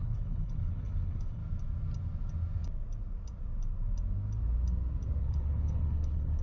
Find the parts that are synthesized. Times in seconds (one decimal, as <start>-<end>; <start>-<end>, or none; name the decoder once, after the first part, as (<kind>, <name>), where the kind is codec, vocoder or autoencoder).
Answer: 0.0-1.4 (codec, HILCodec); 5.2-6.4